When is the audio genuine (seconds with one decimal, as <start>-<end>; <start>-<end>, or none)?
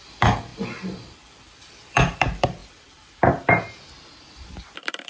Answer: none